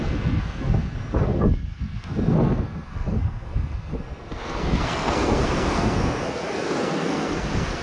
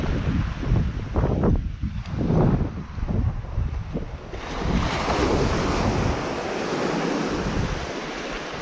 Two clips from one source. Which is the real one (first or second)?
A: second